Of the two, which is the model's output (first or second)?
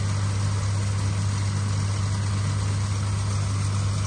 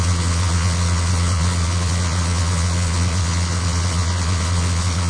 second